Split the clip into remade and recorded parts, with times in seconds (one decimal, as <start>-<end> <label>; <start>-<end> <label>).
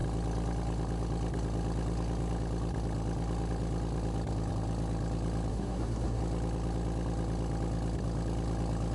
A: 0.0-5.5 recorded; 5.5-6.2 remade; 6.2-8.9 recorded